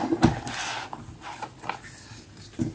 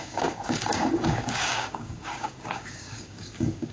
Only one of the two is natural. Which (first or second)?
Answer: first